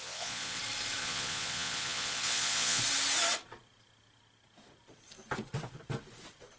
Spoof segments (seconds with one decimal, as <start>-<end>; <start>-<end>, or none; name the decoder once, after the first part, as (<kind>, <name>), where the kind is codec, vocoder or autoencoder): 0.0-0.6 (vocoder, Vocos); 1.0-2.8